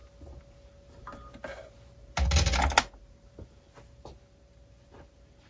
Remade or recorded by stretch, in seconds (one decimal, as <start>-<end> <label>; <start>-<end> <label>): 0.0-5.5 recorded

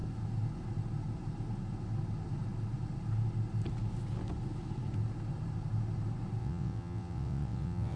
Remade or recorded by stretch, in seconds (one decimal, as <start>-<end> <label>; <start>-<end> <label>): 0.0-6.4 recorded; 6.4-8.0 remade

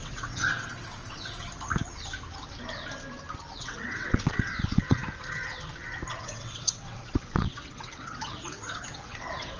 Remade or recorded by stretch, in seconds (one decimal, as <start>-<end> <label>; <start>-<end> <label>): 0.0-1.5 remade; 1.5-3.6 recorded; 3.6-5.0 remade; 5.0-6.2 recorded; 6.2-9.6 remade

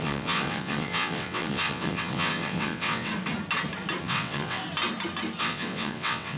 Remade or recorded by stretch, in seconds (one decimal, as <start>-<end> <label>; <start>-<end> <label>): 0.0-3.1 remade; 3.1-4.0 recorded; 4.0-4.6 remade; 4.6-5.4 recorded; 5.4-6.4 remade

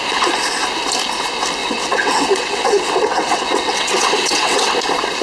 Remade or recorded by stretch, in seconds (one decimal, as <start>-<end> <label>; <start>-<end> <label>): 0.0-1.6 recorded; 1.6-4.7 remade; 4.7-5.2 recorded

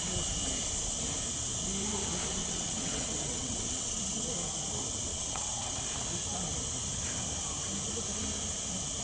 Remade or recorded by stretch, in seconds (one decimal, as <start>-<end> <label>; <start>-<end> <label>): 0.0-2.4 recorded; 2.4-4.3 remade; 4.3-5.1 recorded; 5.1-5.8 remade; 5.8-9.0 recorded

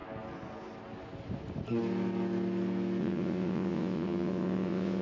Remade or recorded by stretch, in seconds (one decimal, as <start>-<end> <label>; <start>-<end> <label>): 0.0-3.0 recorded; 3.0-5.0 remade

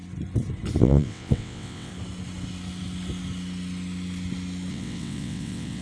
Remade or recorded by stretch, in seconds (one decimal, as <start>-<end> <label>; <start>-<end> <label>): 0.0-0.8 recorded; 0.8-1.9 remade; 1.9-4.7 recorded; 4.7-5.8 remade